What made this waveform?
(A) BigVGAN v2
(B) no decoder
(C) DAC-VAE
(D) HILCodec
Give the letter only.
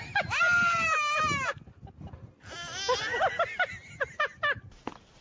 B